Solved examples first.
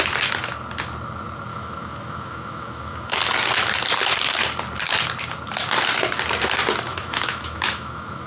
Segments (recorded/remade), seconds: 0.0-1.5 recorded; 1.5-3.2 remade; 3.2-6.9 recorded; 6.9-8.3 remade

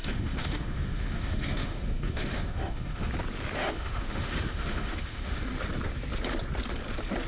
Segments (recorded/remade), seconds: 0.0-3.1 remade; 3.1-3.6 recorded; 3.6-5.4 remade; 5.4-7.3 recorded

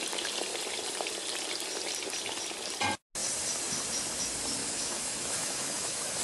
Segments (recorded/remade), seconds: 0.0-4.6 recorded; 4.6-6.2 remade

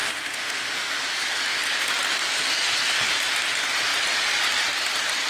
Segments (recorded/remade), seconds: 0.0-1.0 remade; 1.0-5.3 recorded

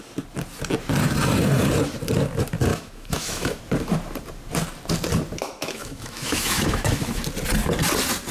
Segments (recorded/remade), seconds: 0.0-2.7 recorded; 2.7-3.6 remade; 3.6-5.4 recorded; 5.4-7.2 remade; 7.2-8.3 recorded